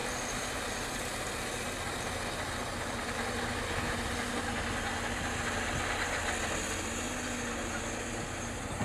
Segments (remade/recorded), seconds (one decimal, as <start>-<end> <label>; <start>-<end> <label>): 0.0-0.9 remade; 0.9-8.8 recorded

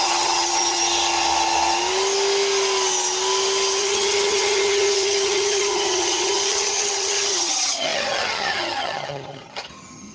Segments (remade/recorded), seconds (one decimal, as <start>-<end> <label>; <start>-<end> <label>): 0.0-0.8 remade; 0.8-3.8 recorded; 3.8-10.1 remade

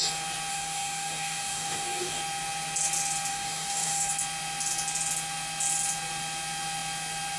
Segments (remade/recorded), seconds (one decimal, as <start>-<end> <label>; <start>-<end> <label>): 0.0-0.5 recorded; 0.5-2.2 remade; 2.2-3.3 recorded; 3.3-4.1 remade; 4.1-7.4 recorded

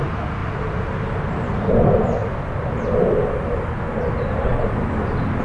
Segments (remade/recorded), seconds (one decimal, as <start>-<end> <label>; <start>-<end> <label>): 0.0-0.4 recorded; 0.4-1.7 remade; 1.7-5.4 recorded

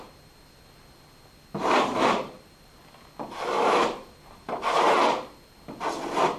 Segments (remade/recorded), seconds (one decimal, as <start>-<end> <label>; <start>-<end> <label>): 0.0-1.9 recorded; 1.9-2.8 remade; 2.8-3.8 recorded; 3.8-5.0 remade; 5.0-6.4 recorded

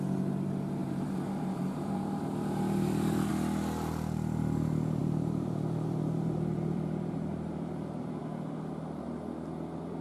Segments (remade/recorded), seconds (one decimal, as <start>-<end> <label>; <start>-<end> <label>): 0.0-0.8 recorded; 0.8-3.3 remade; 3.3-5.0 recorded; 5.0-8.2 remade; 8.2-10.0 recorded

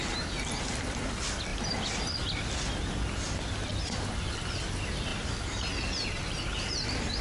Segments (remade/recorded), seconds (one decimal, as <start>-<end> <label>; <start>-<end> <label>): 0.0-7.2 recorded

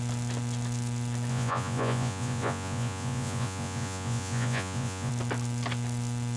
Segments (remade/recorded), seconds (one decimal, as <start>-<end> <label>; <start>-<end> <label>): 0.0-1.3 recorded; 1.3-5.1 remade; 5.1-6.4 recorded